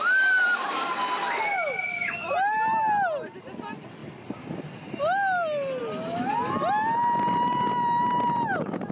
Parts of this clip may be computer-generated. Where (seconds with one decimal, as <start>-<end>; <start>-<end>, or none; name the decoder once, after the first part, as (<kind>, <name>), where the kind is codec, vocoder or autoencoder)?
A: none